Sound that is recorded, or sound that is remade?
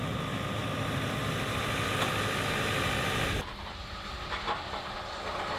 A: recorded